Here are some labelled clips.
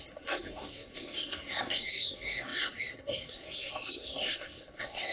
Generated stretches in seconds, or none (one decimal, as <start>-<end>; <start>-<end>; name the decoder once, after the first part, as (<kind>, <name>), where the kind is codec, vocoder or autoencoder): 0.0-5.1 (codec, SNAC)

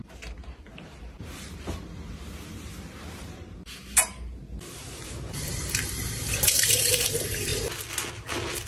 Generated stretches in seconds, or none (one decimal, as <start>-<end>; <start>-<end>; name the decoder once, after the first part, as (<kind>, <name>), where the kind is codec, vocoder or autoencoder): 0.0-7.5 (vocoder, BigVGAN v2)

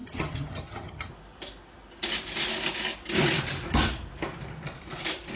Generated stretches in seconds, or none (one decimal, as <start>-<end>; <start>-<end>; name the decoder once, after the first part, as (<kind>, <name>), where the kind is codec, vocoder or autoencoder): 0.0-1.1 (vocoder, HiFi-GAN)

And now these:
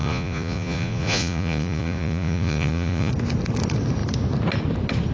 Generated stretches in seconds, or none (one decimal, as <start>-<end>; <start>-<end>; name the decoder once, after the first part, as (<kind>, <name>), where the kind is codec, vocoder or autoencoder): 0.0-3.1 (vocoder, Vocos)